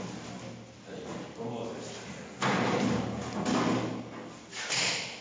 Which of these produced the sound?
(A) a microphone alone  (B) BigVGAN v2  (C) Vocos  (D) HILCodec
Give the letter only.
A